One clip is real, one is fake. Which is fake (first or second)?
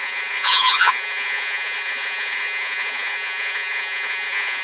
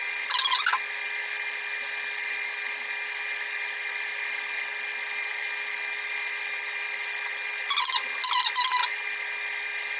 first